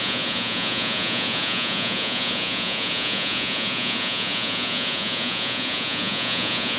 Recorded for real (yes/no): no